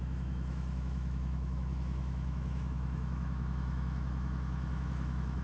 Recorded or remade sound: remade